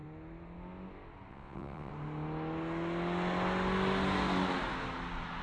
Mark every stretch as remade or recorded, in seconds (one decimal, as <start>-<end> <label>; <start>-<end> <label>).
0.0-1.3 recorded; 1.3-1.9 remade; 1.9-5.4 recorded